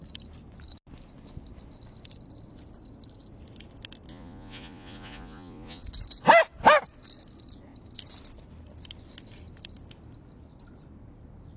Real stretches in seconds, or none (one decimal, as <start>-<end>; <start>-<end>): 0.0-4.1; 5.8-11.6